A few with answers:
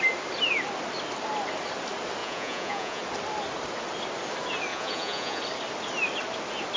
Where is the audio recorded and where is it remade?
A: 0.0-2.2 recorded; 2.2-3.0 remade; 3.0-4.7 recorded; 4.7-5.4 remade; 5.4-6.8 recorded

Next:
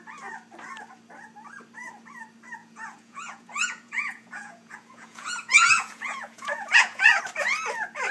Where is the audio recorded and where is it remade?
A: 0.0-2.6 recorded; 2.6-7.2 remade; 7.2-8.1 recorded

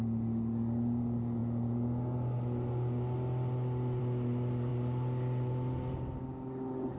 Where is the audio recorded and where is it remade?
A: 0.0-7.0 recorded

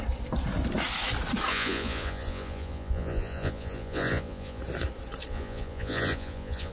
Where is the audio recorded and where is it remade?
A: 0.0-1.5 recorded; 1.5-4.6 remade; 4.6-5.3 recorded; 5.3-6.7 remade

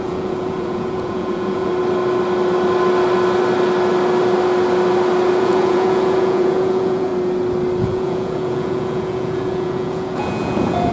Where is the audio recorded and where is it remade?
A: 0.0-1.7 remade; 1.7-5.4 recorded; 5.4-7.1 remade; 7.1-7.8 recorded; 7.8-10.9 remade